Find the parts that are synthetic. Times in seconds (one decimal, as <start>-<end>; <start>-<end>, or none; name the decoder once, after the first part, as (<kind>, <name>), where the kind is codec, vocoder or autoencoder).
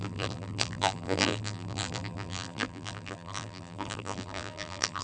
0.0-5.0 (vocoder, BigVGAN v2)